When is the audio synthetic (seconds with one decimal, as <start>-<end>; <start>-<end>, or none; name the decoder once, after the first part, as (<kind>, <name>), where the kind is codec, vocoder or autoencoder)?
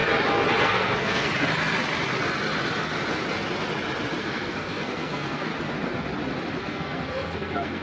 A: 0.6-1.3 (codec, SNAC); 4.2-5.5; 6.6-7.8